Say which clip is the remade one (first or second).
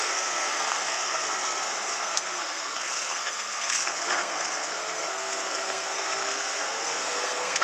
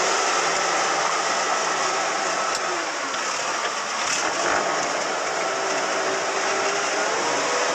first